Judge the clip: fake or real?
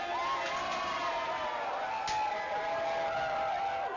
real